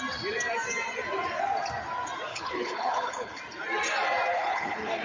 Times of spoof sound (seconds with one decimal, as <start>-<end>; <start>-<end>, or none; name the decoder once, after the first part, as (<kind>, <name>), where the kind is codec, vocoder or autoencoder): 2.3-3.4 (codec, HILCodec); 4.3-5.0